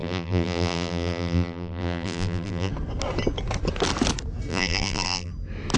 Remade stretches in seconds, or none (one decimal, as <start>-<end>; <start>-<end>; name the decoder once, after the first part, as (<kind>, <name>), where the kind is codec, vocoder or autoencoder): 0.0-2.7 (vocoder, BigVGAN v2); 4.5-5.3